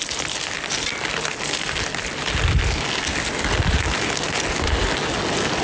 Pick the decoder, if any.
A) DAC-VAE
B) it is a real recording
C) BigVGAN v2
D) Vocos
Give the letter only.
B